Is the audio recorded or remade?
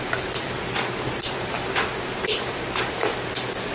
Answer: recorded